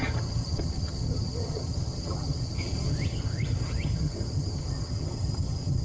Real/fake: fake